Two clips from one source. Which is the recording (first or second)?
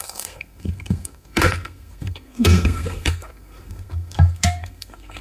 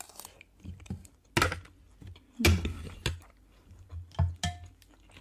second